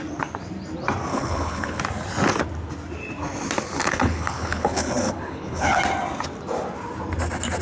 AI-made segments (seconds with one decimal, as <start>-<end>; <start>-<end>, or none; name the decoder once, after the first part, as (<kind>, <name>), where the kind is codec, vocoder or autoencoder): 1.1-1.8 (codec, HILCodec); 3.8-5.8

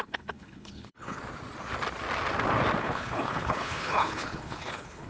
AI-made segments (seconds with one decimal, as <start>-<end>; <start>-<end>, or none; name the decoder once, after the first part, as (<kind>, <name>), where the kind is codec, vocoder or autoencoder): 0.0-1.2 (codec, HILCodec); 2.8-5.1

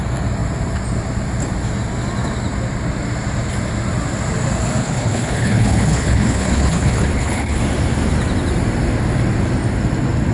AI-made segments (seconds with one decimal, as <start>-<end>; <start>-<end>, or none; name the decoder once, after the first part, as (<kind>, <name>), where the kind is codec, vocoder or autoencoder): 4.8-7.6 (codec, HILCodec)

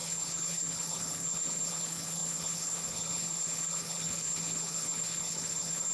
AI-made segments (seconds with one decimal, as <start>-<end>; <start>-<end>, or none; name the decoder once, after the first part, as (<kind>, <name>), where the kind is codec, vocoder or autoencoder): 0.0-5.9 (codec, HILCodec)

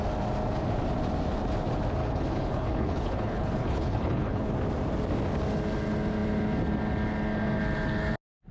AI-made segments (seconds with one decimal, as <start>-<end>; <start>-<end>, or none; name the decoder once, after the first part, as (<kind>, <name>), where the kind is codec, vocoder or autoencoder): 2.0-4.5 (codec, HILCodec)

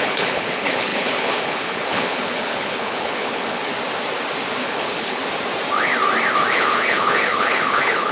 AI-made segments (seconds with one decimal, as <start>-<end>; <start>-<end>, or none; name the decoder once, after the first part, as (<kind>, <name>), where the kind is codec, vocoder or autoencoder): 0.0-3.7 (codec, HILCodec); 4.6-5.2; 6.5-8.1

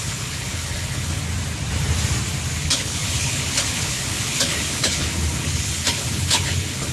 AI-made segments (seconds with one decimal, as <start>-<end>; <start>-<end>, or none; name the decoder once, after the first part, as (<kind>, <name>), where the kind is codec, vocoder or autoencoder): 0.0-1.2 (codec, HILCodec); 2.6-6.9